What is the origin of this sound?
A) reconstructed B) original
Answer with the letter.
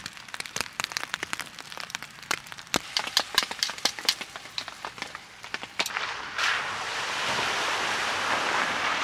A